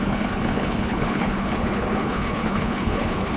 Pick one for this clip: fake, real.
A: fake